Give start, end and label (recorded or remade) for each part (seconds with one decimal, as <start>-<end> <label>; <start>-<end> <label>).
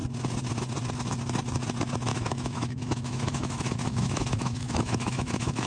0.0-2.1 recorded; 2.1-5.7 remade